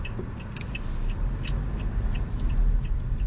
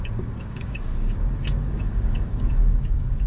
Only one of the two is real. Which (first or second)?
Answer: first